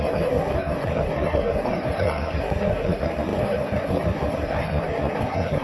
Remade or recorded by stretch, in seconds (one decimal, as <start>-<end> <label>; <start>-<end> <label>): 0.0-5.6 remade